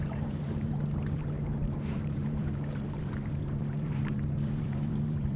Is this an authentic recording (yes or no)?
no